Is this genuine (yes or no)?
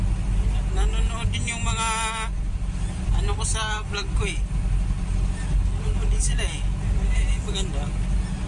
yes